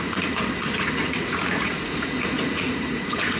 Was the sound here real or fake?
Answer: fake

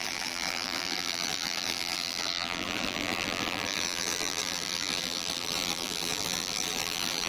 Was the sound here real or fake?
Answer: fake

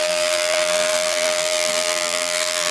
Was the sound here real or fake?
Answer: fake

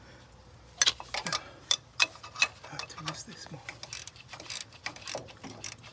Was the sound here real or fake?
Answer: real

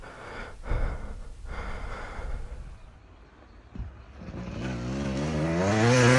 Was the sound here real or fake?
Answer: real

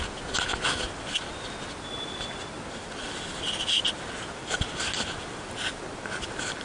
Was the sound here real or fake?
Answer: real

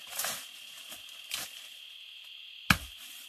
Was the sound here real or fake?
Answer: real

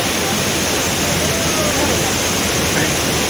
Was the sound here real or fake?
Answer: real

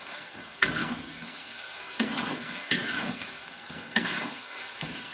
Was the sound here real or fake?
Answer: fake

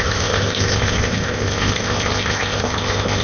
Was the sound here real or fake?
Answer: fake